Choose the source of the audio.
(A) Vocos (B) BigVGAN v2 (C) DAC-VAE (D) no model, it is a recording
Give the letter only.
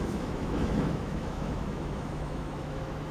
C